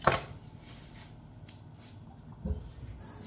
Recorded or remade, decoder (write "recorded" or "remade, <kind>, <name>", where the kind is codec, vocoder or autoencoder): recorded